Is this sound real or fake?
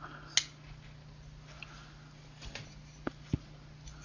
real